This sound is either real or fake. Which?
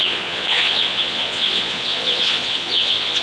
fake